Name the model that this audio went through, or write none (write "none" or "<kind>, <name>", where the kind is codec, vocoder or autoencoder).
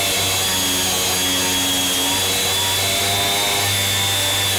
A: none